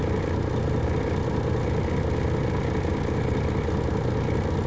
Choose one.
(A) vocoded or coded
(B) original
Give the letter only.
B